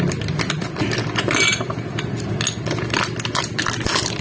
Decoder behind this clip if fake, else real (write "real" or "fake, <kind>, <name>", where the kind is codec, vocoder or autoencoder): real